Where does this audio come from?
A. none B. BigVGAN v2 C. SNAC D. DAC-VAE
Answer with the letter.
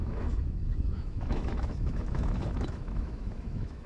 D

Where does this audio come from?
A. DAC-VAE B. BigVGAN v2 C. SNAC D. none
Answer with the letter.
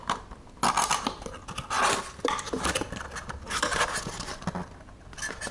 D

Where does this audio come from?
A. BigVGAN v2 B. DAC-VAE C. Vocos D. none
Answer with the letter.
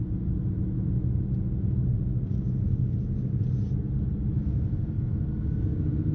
D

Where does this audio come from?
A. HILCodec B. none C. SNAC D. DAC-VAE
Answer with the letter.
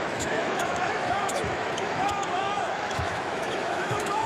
D